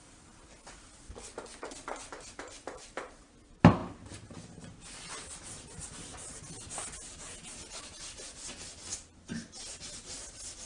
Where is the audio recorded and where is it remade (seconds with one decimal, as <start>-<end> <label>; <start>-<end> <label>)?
0.0-10.7 recorded